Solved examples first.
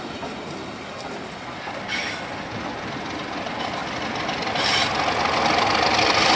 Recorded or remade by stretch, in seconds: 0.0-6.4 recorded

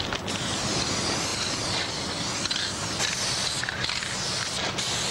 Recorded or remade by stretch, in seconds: 0.0-5.1 recorded

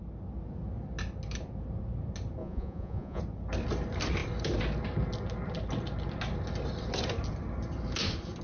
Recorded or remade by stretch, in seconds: 0.0-2.4 recorded; 2.4-3.2 remade; 3.2-8.4 recorded

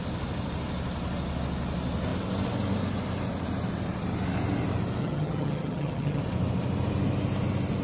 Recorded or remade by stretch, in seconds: 0.0-5.0 recorded; 5.0-6.2 remade; 6.2-7.8 recorded

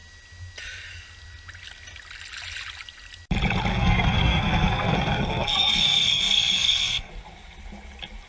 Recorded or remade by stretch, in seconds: 0.0-3.7 recorded; 3.7-7.1 remade; 7.1-8.3 recorded

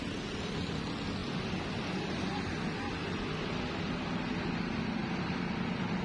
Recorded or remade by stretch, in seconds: 0.0-1.2 recorded; 1.2-3.6 remade; 3.6-5.0 recorded; 5.0-6.0 remade